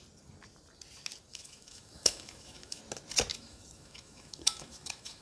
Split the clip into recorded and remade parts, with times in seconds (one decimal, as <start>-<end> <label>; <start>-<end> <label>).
0.0-1.3 recorded; 1.3-2.8 remade; 2.8-3.3 recorded; 3.3-5.2 remade